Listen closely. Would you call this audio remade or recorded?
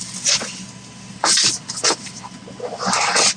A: recorded